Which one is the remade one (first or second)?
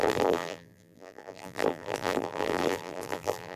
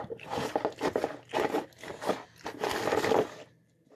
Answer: first